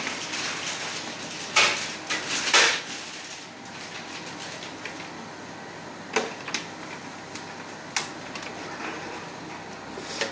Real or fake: real